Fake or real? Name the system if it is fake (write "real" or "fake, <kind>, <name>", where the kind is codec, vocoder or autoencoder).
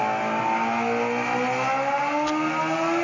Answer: real